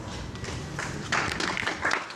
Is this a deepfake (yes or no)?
no